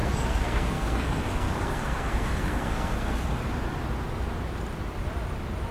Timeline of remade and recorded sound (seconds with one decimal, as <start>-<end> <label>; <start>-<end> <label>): 0.0-3.4 remade; 3.4-5.7 recorded